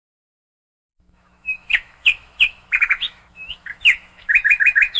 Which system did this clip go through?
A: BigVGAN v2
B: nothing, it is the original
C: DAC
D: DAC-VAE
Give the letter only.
D